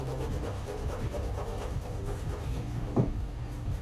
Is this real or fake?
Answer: fake